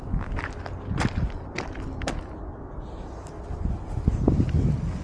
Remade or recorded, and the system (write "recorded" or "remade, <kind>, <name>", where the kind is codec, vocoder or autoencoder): recorded